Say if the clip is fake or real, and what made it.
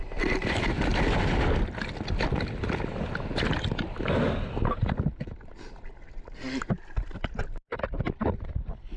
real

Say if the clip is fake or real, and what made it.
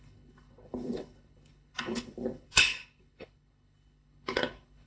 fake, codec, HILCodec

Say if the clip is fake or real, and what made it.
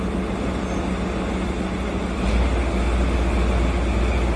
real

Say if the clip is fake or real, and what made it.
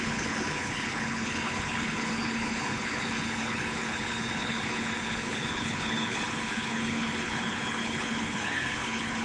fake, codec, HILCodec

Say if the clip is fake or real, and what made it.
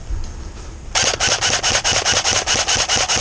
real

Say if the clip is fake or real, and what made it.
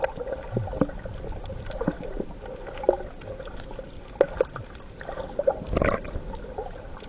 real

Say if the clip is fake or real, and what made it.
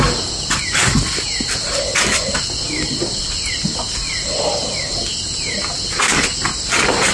real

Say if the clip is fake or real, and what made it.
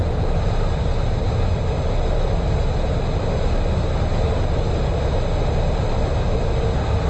real